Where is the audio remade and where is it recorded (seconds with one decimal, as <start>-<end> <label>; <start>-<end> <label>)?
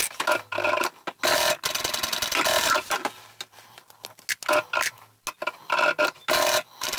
0.0-7.0 recorded